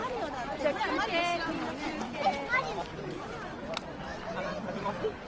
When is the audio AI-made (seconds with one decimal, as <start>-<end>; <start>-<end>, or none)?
0.0-0.8; 1.3-3.3; 4.1-5.3